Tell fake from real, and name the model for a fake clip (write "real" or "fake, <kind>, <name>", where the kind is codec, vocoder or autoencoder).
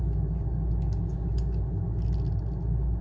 real